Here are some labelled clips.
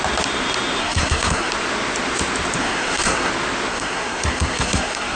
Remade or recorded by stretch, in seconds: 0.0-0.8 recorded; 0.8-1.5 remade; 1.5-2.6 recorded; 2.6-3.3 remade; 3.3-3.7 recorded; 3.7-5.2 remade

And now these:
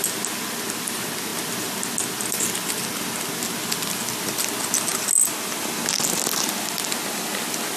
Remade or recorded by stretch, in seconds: 0.0-7.8 recorded

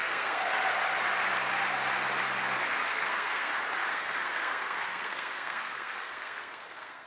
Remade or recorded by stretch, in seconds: 0.0-0.5 remade; 0.5-2.9 recorded; 2.9-3.5 remade; 3.5-3.9 recorded; 3.9-7.1 remade

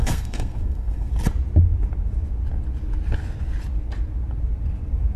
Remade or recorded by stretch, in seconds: 0.0-1.1 remade; 1.1-5.2 recorded

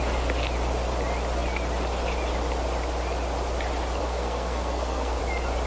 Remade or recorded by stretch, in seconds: 0.0-4.0 recorded; 4.0-5.2 remade; 5.2-5.7 recorded

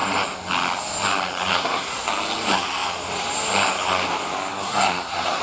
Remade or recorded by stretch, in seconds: 0.0-1.5 recorded; 1.5-2.1 remade; 2.1-4.5 recorded; 4.5-5.4 remade